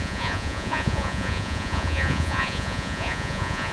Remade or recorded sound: remade